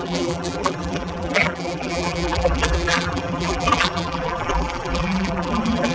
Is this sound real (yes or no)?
no